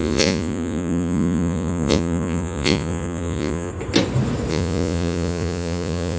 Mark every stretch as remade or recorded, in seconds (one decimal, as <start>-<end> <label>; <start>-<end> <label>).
0.0-3.7 remade; 3.7-4.5 recorded; 4.5-6.2 remade